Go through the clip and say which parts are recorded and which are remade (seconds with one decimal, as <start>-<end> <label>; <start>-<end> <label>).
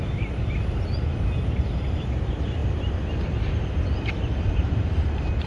0.0-2.6 remade; 2.6-4.1 recorded; 4.1-5.5 remade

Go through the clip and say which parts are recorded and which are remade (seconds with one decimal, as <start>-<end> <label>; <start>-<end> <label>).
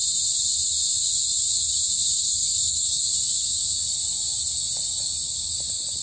0.0-2.3 recorded; 2.3-3.0 remade; 3.0-6.0 recorded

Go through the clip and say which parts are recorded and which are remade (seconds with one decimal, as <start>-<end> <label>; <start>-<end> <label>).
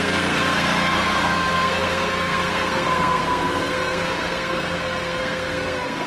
0.0-6.1 remade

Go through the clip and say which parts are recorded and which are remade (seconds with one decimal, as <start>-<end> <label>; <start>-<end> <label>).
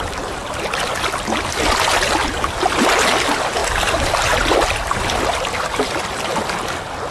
0.0-7.1 recorded